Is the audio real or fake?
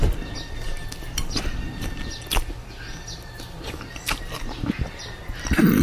real